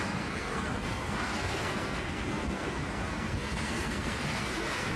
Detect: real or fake fake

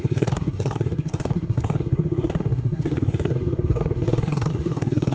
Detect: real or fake fake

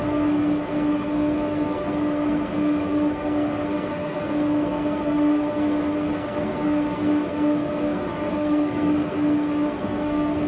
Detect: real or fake fake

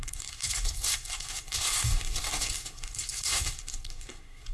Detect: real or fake fake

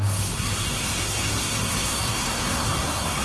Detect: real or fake fake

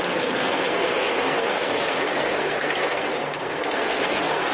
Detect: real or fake fake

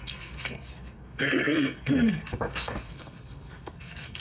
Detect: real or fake fake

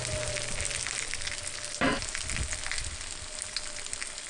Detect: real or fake real